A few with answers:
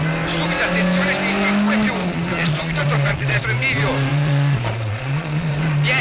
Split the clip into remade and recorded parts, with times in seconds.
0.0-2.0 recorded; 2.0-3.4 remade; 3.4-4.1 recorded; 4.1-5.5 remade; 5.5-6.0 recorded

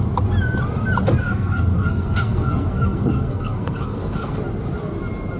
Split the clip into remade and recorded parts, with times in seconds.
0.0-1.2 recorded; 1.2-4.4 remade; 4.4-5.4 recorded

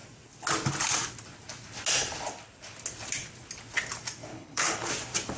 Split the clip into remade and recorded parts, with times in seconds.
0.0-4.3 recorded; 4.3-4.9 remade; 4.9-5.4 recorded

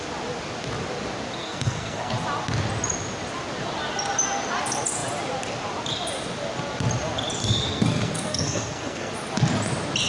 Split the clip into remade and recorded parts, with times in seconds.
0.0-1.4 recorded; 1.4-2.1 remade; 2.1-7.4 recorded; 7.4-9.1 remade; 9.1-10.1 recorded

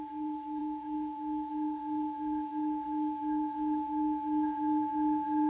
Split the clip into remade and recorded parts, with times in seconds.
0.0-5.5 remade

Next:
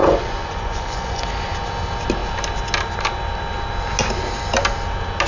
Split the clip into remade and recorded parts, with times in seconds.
0.0-1.2 remade; 1.2-5.3 recorded

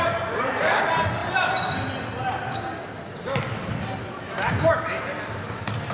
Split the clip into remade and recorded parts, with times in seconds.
0.0-5.9 recorded

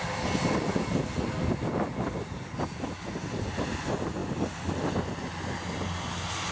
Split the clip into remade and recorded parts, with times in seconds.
0.0-6.5 recorded